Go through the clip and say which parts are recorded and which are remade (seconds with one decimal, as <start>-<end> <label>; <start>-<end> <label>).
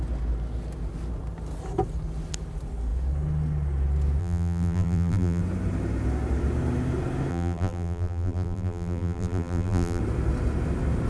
0.0-4.2 recorded; 4.2-5.4 remade; 5.4-7.3 recorded; 7.3-10.0 remade; 10.0-11.1 recorded